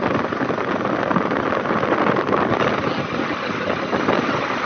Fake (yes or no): no